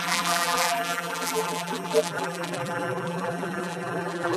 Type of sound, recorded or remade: remade